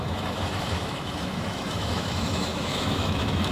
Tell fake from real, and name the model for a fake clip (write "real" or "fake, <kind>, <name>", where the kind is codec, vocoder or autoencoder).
fake, autoencoder, DAC-VAE